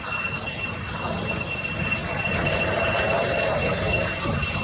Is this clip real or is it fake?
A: real